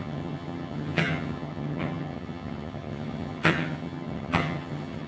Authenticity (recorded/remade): remade